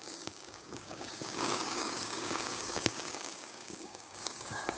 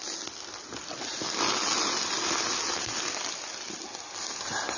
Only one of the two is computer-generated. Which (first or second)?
first